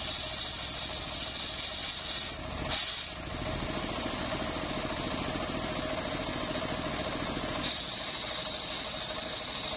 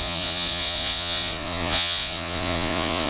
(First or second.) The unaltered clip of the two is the first